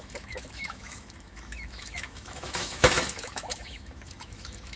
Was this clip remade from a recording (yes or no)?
yes